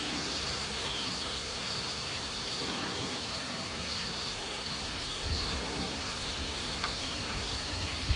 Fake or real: fake